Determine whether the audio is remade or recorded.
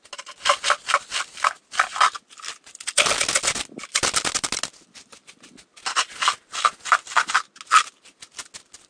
recorded